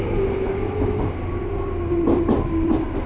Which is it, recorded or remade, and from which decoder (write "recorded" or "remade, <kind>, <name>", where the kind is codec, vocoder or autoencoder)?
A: remade, vocoder, BigVGAN v2